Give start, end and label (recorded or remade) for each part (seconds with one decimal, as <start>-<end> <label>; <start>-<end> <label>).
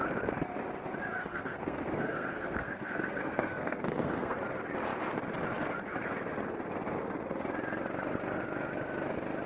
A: 0.0-1.3 recorded; 1.3-4.4 remade; 4.4-9.5 recorded